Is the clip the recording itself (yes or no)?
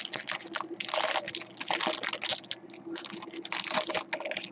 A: yes